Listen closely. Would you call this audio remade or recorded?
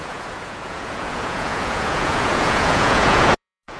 remade